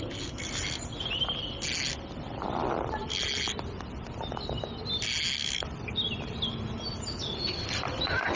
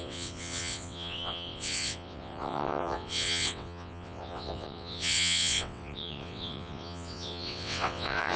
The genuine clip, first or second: first